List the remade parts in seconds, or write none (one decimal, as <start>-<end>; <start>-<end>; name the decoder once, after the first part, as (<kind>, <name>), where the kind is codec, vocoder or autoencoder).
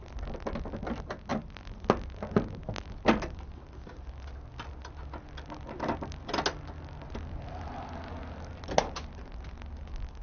none